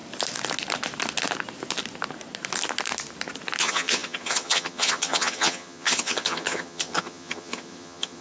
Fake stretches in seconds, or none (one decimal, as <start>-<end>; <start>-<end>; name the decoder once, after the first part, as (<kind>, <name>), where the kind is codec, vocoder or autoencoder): 3.6-8.2 (vocoder, HiFi-GAN)